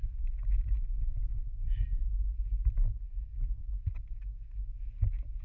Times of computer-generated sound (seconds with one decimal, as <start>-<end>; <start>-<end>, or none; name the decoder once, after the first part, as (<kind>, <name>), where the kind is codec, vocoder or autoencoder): none